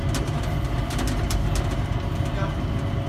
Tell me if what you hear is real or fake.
real